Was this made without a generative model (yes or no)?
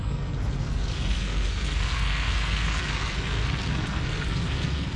no